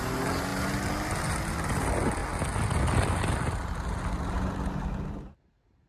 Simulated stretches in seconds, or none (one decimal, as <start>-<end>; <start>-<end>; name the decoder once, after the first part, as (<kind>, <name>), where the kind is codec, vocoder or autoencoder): none